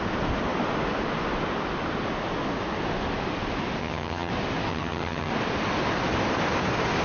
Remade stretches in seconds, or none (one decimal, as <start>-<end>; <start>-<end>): 3.8-4.3; 4.7-5.3